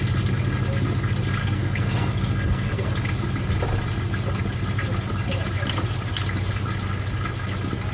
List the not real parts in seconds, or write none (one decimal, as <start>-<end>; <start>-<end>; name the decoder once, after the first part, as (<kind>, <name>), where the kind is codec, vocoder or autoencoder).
1.4-2.9 (codec, SNAC)